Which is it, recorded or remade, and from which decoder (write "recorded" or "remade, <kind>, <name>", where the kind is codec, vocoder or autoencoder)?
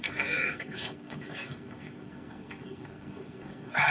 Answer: remade, codec, SNAC